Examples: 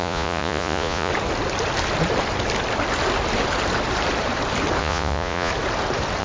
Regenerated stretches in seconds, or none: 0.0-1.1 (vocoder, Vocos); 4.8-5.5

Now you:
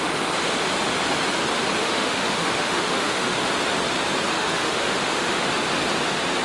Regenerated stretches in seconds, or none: 1.8-3.5 (autoencoder, DAC-VAE); 4.3-5.5

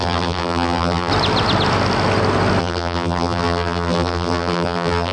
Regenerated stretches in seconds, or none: 0.0-1.1 (vocoder, BigVGAN v2); 2.6-5.1

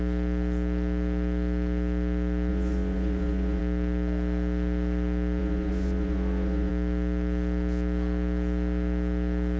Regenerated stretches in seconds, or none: 2.5-3.6 (vocoder, Vocos); 5.4-6.7

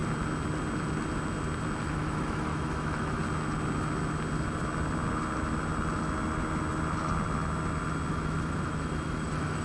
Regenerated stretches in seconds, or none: 1.9-3.2 (autoencoder, DAC-VAE); 8.1-9.6